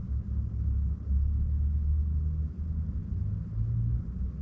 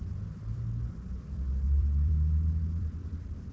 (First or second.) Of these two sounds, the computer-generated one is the second